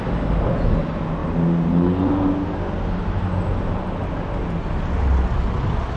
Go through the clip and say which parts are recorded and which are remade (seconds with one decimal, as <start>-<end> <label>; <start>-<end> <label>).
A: 0.0-6.0 recorded